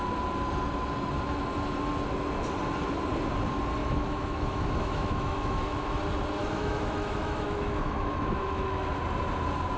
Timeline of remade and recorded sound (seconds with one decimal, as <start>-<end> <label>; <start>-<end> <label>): 0.0-3.8 recorded; 3.8-6.0 remade; 6.0-6.4 recorded; 6.4-9.0 remade; 9.0-9.8 recorded